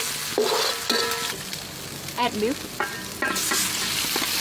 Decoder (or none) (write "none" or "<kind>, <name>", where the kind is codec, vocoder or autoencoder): none